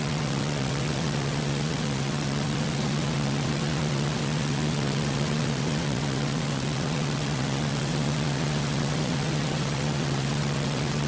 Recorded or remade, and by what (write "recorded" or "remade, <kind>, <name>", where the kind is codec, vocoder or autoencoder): remade, vocoder, WaveNeXt